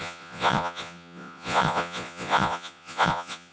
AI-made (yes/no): yes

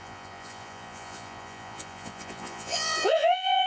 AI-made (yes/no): yes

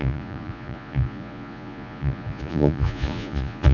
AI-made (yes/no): yes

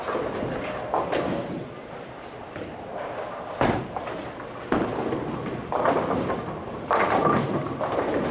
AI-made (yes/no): no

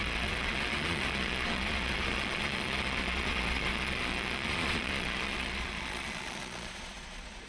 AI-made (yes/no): yes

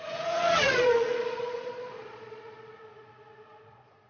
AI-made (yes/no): yes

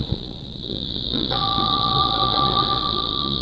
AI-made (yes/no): yes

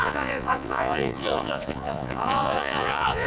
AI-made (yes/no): yes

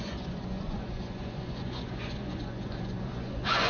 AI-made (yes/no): yes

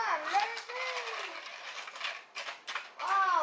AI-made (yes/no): no